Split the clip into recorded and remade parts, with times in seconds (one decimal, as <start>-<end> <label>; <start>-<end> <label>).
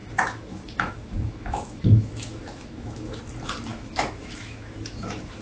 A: 0.0-3.2 remade; 3.2-3.7 recorded; 3.7-5.4 remade